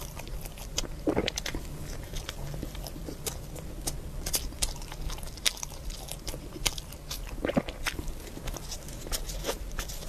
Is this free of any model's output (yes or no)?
no